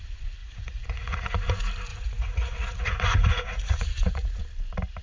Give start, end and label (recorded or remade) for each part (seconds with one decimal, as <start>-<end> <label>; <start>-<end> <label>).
0.0-0.4 recorded; 0.4-1.3 remade; 1.3-1.9 recorded; 1.9-4.4 remade; 4.4-5.0 recorded